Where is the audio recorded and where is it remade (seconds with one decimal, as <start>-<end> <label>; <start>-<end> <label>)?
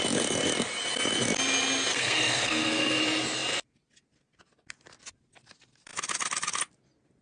0.0-1.9 recorded; 1.9-3.0 remade; 3.0-7.2 recorded